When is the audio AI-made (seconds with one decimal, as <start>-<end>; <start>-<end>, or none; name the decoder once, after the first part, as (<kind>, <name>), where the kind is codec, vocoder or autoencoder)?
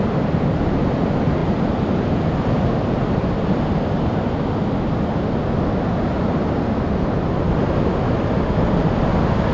none